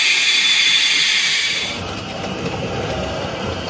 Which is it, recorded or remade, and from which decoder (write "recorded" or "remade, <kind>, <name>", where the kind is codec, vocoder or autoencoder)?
remade, vocoder, BigVGAN v2